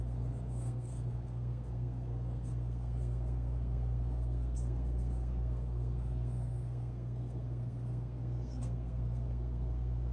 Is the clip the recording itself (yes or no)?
no